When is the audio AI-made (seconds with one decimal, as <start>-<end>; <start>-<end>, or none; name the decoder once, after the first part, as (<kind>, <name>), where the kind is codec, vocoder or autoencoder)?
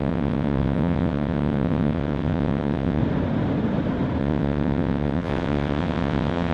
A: 0.0-3.0 (vocoder, WaveNeXt); 4.2-6.5